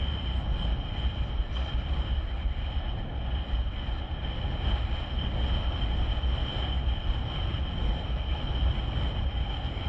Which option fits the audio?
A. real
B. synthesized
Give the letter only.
A